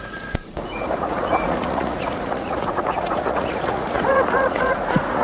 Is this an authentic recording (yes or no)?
no